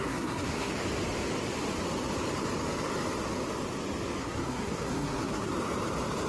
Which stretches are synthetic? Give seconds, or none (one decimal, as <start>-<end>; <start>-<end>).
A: 0.0-0.7; 4.2-5.5